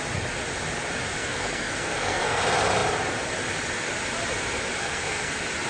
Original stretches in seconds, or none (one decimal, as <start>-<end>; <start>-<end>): 0.0-1.2; 2.4-4.8; 5.3-5.7